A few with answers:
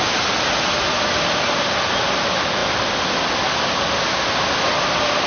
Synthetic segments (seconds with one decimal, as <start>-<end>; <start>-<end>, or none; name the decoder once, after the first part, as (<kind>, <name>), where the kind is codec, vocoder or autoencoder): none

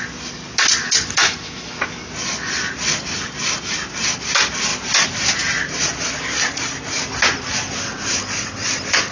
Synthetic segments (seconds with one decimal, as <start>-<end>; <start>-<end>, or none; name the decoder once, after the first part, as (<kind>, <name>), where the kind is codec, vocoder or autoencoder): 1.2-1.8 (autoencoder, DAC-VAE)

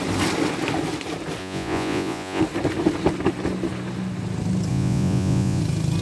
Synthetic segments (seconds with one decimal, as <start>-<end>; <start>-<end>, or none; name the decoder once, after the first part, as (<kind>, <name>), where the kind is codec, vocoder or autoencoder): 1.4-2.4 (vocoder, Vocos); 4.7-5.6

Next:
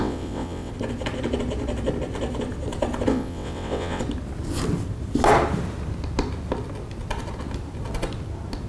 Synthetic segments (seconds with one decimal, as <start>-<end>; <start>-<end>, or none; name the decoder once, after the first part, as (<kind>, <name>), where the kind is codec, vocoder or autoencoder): 0.0-0.7 (vocoder, WaveNeXt); 3.1-4.0

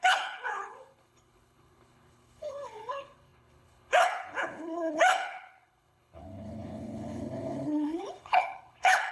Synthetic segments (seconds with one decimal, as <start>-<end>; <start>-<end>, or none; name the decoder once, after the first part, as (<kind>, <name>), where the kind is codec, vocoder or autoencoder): 0.0-9.1 (codec, HILCodec)

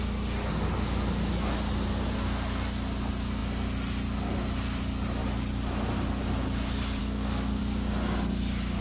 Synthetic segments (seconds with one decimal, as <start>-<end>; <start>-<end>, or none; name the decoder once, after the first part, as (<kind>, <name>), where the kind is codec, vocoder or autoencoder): 7.0-7.6 (codec, SNAC)

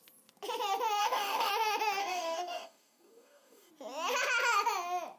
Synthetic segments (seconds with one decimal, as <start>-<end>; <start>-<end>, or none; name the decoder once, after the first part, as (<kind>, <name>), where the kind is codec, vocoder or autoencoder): 1.0-1.5 (codec, DAC); 2.0-3.7

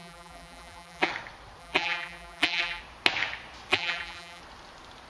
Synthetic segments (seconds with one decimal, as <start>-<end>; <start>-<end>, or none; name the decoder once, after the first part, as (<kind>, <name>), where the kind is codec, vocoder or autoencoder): 0.0-1.1 (vocoder, BigVGAN v2); 1.6-2.8; 3.7-4.4